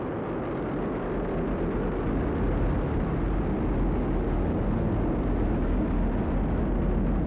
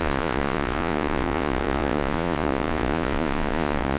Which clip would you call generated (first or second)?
second